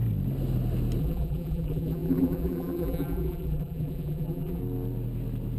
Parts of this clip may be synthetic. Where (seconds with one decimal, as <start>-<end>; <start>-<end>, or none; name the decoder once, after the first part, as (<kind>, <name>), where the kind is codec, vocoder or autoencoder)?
1.0-4.6 (vocoder, BigVGAN v2)